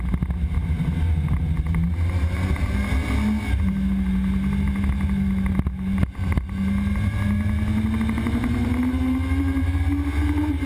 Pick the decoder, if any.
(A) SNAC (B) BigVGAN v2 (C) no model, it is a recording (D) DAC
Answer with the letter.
C